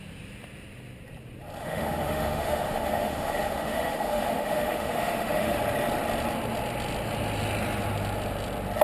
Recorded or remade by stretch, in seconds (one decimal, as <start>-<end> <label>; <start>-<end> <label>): 0.0-1.6 recorded; 1.6-5.6 remade; 5.6-8.8 recorded